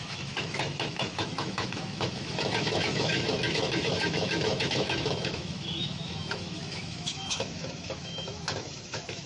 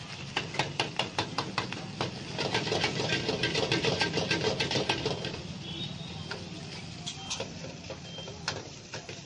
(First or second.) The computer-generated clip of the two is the first